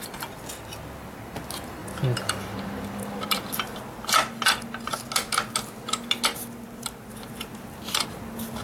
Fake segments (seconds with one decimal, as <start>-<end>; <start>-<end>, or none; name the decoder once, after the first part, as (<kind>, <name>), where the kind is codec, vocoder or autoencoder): none

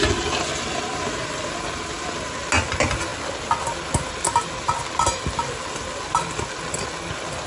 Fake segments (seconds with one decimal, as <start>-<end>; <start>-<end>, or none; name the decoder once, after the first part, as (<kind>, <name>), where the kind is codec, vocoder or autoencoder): none

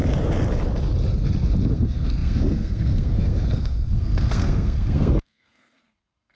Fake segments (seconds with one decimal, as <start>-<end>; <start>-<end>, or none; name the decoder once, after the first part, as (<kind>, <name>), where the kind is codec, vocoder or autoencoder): 1.7-6.4 (codec, SNAC)

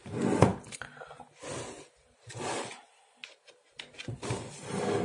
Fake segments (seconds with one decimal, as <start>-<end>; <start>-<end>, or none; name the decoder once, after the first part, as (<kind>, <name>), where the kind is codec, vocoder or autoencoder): none

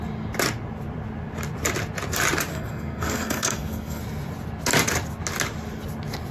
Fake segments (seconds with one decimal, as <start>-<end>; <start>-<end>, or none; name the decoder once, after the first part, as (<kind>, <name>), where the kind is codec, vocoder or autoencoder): 2.5-4.0 (codec, SNAC)

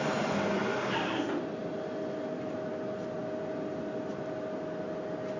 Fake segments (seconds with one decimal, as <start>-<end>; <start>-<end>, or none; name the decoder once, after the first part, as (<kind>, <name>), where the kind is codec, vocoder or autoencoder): none

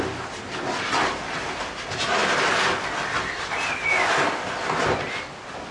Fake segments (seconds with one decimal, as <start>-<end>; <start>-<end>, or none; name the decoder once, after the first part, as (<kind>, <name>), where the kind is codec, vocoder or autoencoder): none

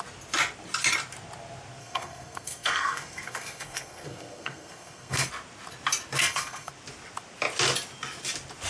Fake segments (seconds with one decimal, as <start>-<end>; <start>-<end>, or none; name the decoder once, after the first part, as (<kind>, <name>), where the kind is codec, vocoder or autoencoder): 1.8-5.3 (codec, SNAC); 6.2-6.7